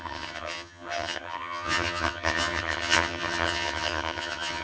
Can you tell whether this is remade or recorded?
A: remade